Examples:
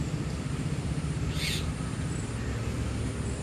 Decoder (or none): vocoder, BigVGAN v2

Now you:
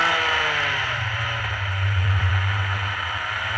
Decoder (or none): vocoder, BigVGAN v2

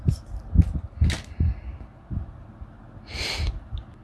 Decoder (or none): none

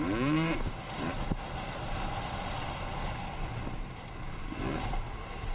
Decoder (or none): none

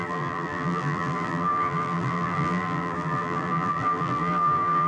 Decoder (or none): vocoder, BigVGAN v2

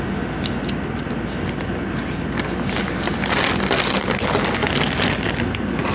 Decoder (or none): none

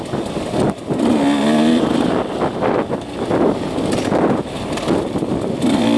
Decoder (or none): none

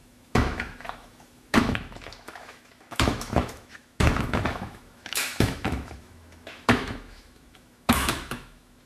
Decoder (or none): autoencoder, DAC-VAE